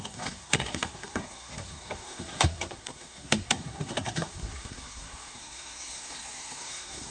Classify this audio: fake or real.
fake